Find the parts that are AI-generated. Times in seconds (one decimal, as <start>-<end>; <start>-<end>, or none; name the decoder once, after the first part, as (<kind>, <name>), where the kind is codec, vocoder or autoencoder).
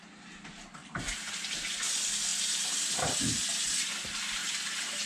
0.8-1.3 (vocoder, BigVGAN v2); 4.4-5.1